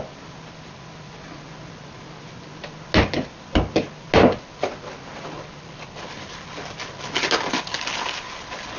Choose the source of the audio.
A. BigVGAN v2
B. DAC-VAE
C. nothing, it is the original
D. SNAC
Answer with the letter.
C